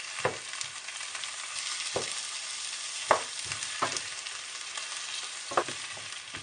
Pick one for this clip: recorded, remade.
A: recorded